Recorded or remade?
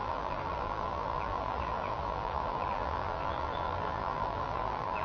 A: remade